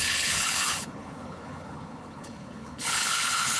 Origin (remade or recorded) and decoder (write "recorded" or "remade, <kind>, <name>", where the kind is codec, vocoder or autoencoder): remade, codec, HILCodec